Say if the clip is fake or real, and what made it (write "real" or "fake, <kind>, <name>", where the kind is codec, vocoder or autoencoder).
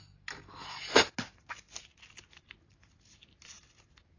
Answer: real